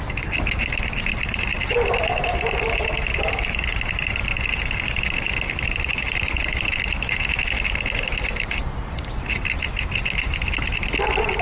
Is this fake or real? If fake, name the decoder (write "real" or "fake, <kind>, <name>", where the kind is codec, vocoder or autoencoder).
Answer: real